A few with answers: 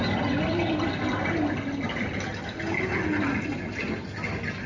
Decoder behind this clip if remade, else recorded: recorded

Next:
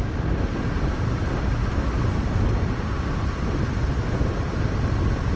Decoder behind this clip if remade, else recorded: recorded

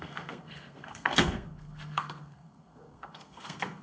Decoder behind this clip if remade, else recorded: remade, codec, SNAC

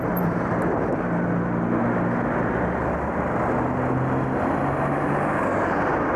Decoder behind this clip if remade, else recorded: recorded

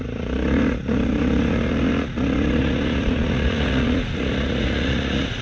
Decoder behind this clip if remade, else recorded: remade, vocoder, Vocos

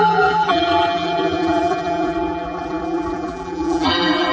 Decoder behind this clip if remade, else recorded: remade, vocoder, BigVGAN v2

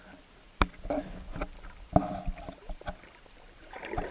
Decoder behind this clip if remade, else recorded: recorded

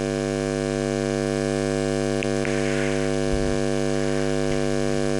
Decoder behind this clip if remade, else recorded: recorded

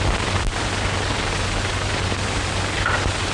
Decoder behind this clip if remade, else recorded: recorded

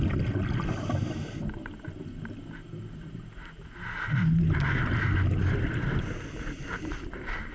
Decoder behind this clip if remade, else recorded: recorded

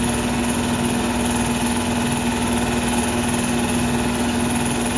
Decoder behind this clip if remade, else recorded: recorded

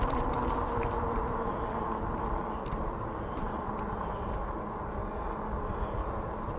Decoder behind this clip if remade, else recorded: recorded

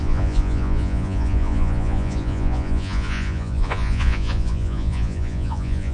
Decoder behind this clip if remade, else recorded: remade, vocoder, Vocos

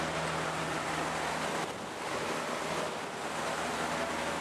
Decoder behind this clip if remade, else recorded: recorded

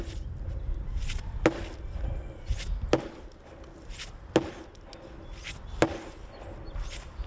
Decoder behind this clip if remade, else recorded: recorded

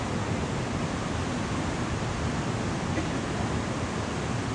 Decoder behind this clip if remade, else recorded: recorded